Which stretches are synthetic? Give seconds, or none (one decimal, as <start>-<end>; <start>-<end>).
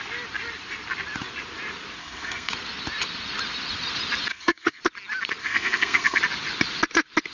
2.0-2.5; 4.3-4.8; 5.4-6.2